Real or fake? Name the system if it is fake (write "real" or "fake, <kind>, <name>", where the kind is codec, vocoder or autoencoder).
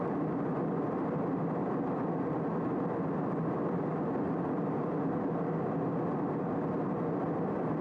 real